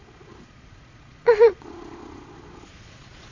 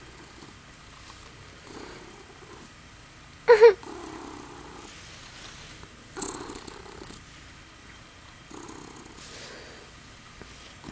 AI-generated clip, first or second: first